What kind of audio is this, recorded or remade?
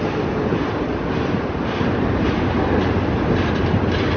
remade